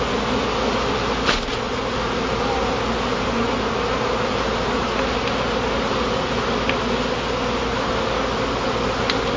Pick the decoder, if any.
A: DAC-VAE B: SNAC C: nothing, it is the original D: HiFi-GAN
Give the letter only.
C